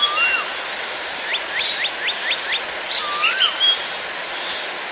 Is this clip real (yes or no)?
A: yes